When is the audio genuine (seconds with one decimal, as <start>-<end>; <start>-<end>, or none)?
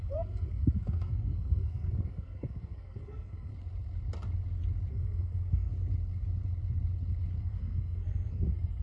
3.5-4.9; 5.7-7.4